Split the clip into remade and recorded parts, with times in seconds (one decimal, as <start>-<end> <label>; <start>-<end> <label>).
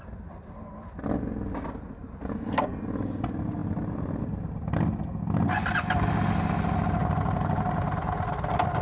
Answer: 0.0-8.8 recorded